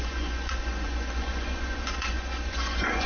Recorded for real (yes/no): no